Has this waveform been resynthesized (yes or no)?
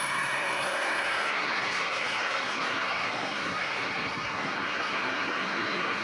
yes